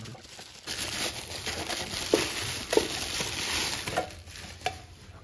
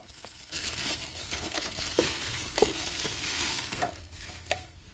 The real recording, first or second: first